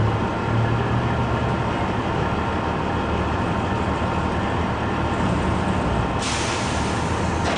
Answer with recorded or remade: recorded